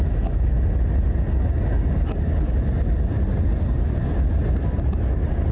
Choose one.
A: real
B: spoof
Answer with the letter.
A